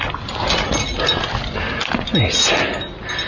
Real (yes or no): yes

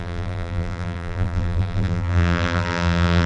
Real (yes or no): no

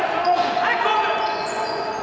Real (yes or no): no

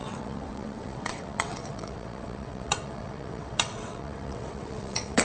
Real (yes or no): no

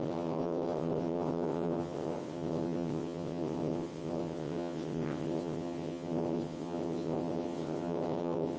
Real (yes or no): no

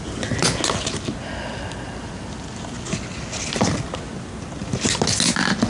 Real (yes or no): yes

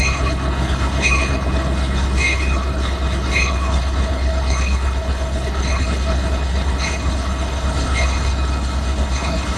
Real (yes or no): no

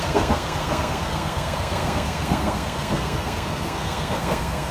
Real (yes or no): no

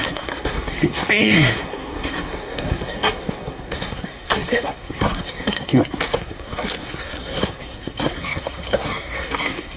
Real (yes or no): no